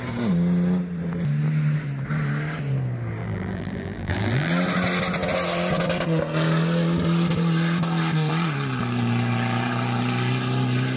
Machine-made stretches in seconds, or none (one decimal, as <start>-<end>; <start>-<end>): 3.2-4.5